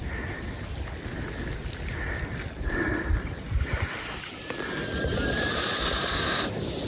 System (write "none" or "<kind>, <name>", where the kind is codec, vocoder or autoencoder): none